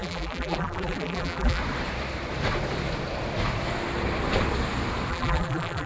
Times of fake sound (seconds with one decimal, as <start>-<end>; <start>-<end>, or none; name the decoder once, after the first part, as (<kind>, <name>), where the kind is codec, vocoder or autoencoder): 0.0-1.6 (vocoder, BigVGAN v2); 5.1-5.9